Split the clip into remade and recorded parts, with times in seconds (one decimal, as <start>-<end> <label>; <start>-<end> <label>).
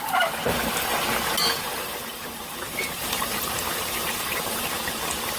0.0-1.6 recorded; 1.6-4.8 remade; 4.8-5.4 recorded